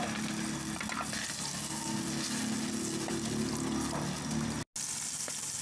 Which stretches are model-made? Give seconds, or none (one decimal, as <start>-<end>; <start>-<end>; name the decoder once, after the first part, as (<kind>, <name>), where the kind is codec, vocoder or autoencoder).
none